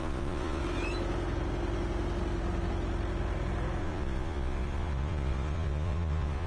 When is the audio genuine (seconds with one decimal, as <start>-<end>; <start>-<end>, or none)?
0.6-3.8